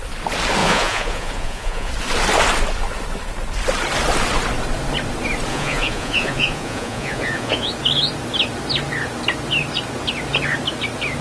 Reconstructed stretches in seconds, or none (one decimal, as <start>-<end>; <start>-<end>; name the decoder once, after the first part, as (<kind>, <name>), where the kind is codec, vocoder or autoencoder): 0.6-1.9 (vocoder, Vocos); 5.5-7.7